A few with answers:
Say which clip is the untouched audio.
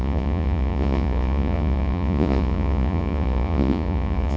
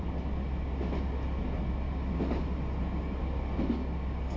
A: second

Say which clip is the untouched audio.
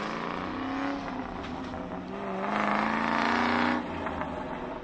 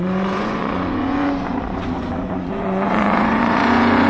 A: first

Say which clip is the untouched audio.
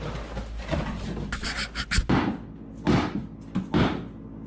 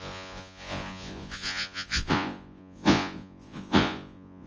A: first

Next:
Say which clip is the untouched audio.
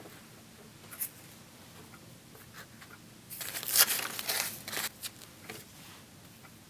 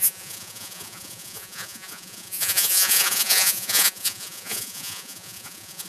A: first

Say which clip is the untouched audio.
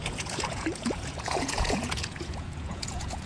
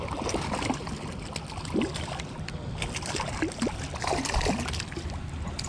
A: second